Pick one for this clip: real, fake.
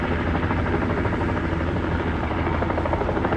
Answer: fake